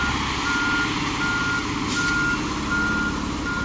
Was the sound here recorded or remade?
recorded